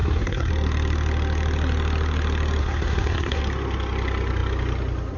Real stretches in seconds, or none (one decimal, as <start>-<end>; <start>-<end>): 0.5-2.6; 3.4-5.2